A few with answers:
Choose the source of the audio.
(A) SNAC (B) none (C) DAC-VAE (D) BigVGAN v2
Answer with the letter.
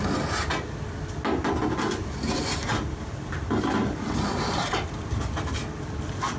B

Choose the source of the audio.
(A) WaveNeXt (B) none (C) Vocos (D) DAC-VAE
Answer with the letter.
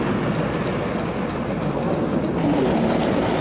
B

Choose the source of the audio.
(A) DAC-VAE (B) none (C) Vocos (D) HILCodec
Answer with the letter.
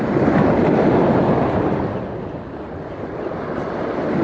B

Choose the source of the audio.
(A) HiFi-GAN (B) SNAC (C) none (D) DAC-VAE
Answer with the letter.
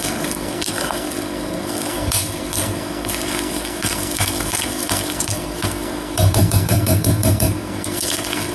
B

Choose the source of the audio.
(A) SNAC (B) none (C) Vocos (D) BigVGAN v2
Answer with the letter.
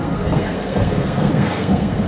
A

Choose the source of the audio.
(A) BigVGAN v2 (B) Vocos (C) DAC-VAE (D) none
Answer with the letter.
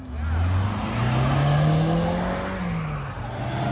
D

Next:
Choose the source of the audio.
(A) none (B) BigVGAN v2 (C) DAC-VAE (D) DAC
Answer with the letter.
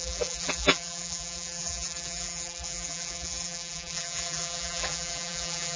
B